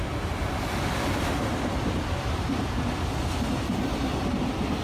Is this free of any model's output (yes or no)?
yes